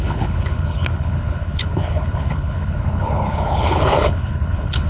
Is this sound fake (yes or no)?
yes